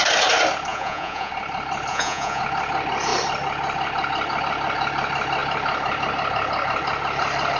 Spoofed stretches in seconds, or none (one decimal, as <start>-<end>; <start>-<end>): 0.7-1.3; 1.9-2.4